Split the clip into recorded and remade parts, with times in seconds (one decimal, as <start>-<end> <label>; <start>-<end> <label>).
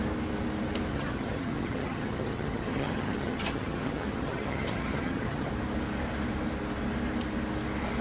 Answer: 0.0-0.9 recorded; 0.9-5.5 remade; 5.5-8.0 recorded